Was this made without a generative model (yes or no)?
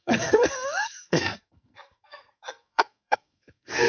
no